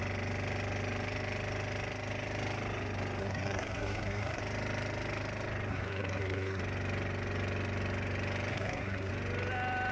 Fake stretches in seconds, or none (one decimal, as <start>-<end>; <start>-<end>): 3.2-4.4; 5.7-6.6; 8.5-9.1